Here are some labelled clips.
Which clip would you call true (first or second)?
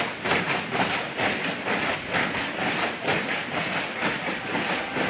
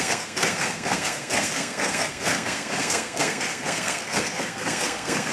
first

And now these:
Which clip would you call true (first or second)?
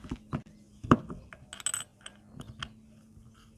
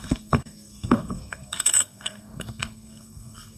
first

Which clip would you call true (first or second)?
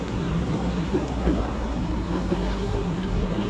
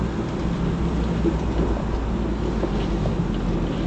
second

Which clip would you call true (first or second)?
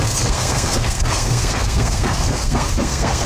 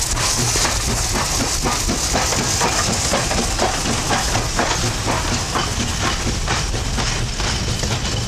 second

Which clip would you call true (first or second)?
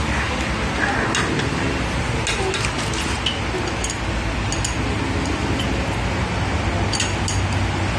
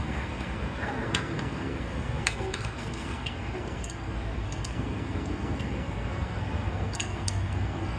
first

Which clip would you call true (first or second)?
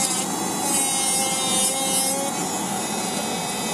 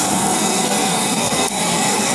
first